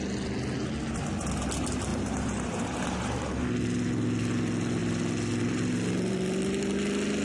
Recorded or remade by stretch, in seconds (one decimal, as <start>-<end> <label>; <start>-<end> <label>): 0.0-1.9 recorded; 1.9-3.3 remade; 3.3-7.2 recorded